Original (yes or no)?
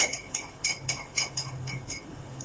no